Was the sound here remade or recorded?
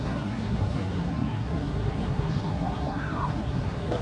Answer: remade